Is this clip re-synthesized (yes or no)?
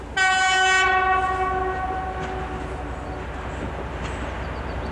no